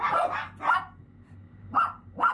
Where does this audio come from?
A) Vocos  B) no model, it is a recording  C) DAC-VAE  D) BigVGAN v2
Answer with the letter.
B